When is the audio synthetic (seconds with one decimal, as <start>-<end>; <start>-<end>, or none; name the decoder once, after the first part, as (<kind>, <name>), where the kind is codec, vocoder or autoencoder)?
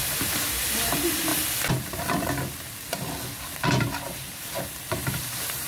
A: 0.0-1.3 (vocoder, BigVGAN v2); 3.8-5.7